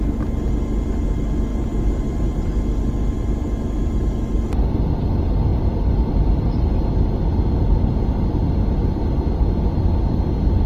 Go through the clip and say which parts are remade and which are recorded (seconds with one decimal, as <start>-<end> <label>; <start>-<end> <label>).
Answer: 0.0-1.5 recorded; 1.5-2.5 remade; 2.5-5.5 recorded; 5.5-7.1 remade; 7.1-10.7 recorded